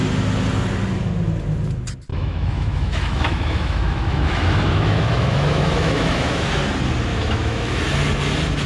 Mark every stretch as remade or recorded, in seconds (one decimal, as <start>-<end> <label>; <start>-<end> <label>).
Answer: 0.0-2.1 recorded; 2.1-6.6 remade; 6.6-7.1 recorded; 7.1-7.8 remade; 7.8-8.7 recorded